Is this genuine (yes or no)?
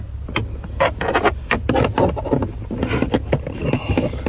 yes